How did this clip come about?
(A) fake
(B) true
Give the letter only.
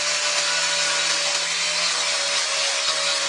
B